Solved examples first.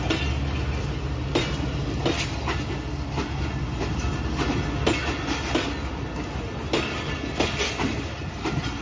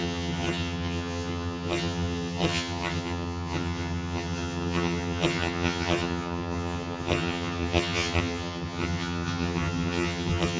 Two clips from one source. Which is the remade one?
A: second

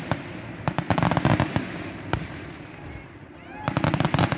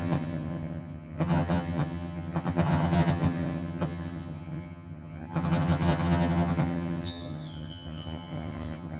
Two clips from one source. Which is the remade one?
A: second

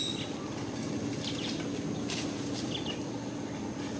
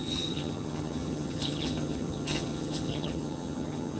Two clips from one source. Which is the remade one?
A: second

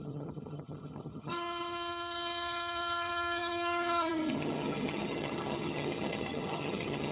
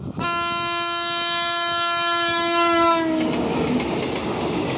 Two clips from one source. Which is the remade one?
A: first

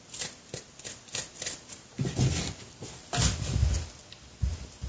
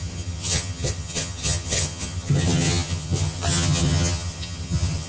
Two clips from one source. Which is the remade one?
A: second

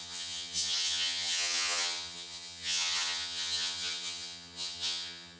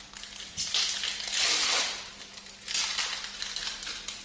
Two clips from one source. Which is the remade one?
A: first